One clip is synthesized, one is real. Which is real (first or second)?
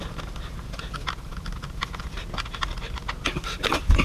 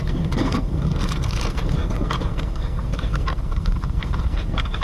first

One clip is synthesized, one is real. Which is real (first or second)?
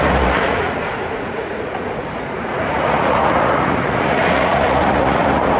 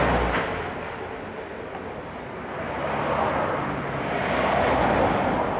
second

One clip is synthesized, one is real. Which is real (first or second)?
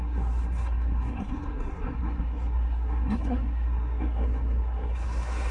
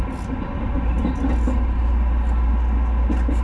second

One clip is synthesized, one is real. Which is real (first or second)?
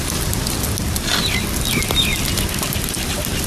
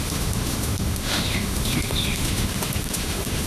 first